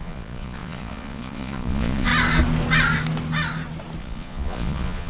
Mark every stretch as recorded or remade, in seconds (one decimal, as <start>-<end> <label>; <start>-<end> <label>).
0.0-2.1 remade; 2.1-4.0 recorded; 4.0-5.1 remade